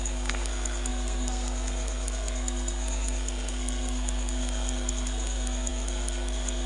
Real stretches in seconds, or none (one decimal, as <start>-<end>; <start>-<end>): none